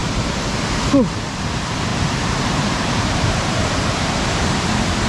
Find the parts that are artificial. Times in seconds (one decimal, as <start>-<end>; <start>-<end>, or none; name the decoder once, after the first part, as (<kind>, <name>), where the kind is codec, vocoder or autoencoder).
0.0-0.5 (vocoder, BigVGAN v2); 1.9-5.1